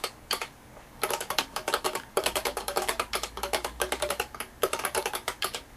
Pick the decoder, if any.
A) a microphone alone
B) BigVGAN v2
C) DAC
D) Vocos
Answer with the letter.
C